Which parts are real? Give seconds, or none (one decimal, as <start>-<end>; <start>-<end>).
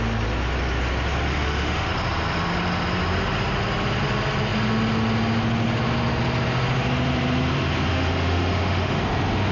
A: 0.0-1.3; 1.9-7.9; 9.0-9.5